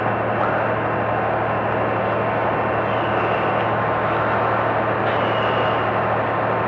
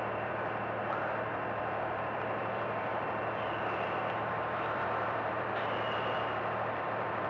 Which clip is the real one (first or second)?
first